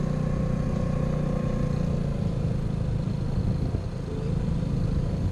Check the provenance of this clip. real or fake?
real